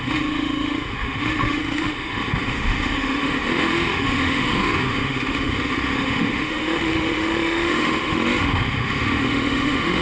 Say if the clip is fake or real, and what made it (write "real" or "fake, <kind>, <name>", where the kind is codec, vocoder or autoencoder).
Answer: fake, autoencoder, DAC-VAE